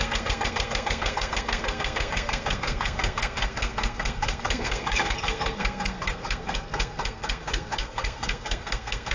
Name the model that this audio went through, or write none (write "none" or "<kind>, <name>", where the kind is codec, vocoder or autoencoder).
codec, SNAC